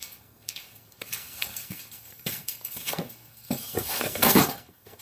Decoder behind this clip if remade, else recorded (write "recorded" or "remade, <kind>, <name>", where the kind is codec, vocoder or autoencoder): remade, codec, SNAC